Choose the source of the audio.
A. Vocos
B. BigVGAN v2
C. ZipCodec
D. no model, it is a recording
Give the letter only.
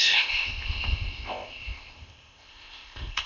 C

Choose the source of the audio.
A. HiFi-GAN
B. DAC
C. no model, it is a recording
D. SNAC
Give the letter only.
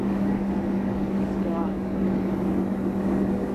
B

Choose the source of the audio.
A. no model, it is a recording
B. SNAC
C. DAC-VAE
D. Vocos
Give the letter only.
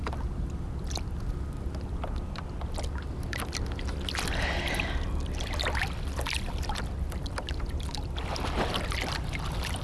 A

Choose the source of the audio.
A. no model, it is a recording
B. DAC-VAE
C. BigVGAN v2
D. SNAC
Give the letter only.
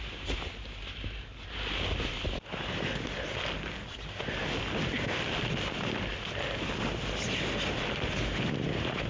A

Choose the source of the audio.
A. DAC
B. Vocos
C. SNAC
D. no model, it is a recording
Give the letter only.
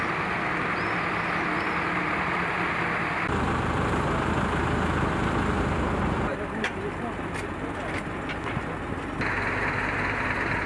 D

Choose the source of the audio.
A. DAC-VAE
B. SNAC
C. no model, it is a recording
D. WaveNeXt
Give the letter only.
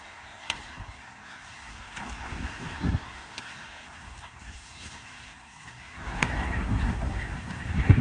B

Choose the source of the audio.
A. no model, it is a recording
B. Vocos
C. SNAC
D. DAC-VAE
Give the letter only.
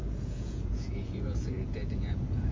B